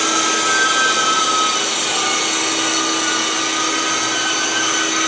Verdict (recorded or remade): recorded